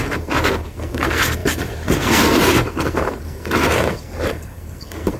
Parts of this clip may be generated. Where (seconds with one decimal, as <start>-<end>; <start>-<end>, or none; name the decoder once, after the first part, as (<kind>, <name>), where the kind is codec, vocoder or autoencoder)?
0.0-5.2 (codec, SNAC)